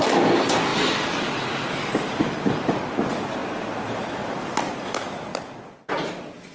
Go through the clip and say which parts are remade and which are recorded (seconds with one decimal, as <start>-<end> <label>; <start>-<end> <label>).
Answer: 0.0-0.7 recorded; 0.7-2.5 remade; 2.5-6.5 recorded

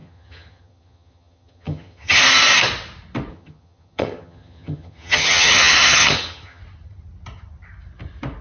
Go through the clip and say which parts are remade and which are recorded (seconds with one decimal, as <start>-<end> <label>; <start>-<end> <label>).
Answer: 0.0-2.2 remade; 2.2-3.3 recorded; 3.3-6.6 remade; 6.6-8.4 recorded

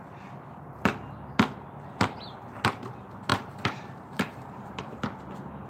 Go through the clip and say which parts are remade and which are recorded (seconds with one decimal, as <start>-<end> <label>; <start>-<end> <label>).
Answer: 0.0-3.3 recorded; 3.3-4.8 remade; 4.8-5.7 recorded

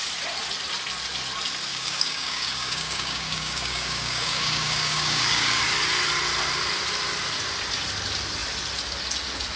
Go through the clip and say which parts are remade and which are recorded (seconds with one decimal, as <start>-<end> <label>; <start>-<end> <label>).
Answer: 0.0-1.7 recorded; 1.7-5.6 remade; 5.6-9.6 recorded

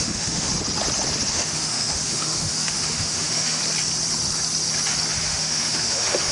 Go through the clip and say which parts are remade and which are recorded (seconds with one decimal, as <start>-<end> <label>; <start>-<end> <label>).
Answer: 0.0-0.5 remade; 0.5-1.3 recorded; 1.3-3.6 remade; 3.6-5.2 recorded; 5.2-6.3 remade